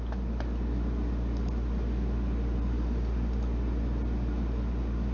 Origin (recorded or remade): recorded